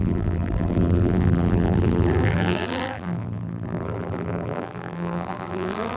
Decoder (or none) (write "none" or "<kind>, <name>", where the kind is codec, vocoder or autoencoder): vocoder, BigVGAN v2